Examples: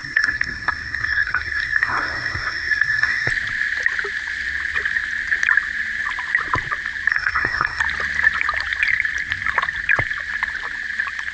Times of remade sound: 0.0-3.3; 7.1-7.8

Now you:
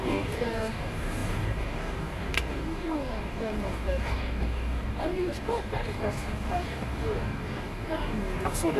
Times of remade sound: 0.0-8.8

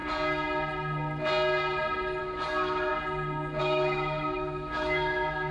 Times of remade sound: 2.2-2.9; 3.6-5.5

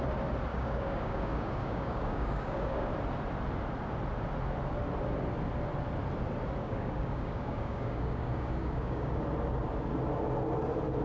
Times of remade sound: 0.5-2.9; 6.6-9.2

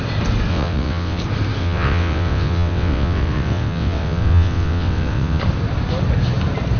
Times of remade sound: 0.5-1.2; 1.6-5.4

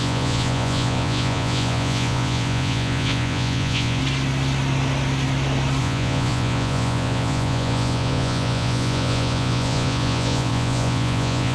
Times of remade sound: 0.0-4.0; 5.8-11.5